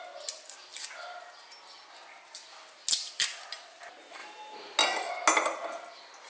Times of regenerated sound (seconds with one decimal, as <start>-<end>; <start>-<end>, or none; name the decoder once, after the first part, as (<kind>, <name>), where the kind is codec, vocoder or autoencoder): none